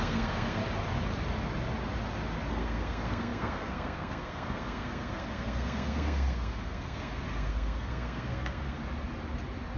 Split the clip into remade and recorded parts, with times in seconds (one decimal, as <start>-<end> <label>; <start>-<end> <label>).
0.0-0.6 remade; 0.6-2.5 recorded; 2.5-8.8 remade; 8.8-9.8 recorded